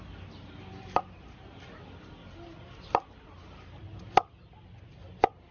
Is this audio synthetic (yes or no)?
no